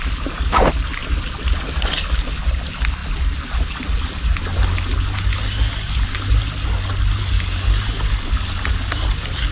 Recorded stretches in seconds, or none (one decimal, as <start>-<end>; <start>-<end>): 0.0-9.5